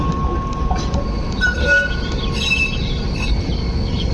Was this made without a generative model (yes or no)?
yes